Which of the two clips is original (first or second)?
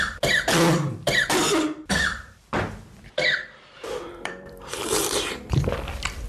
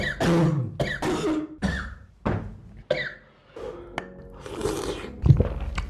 second